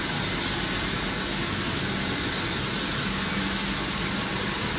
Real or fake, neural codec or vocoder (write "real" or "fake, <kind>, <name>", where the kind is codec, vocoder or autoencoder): real